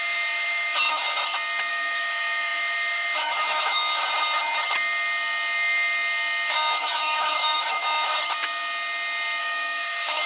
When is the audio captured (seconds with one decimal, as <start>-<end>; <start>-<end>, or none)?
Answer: 1.0-1.7; 3.8-6.8; 7.8-9.4